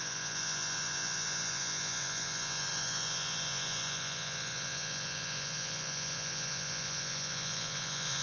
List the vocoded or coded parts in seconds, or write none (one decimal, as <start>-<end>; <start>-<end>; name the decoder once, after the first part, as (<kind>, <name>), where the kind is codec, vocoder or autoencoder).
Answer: 0.0-8.2 (vocoder, Vocos)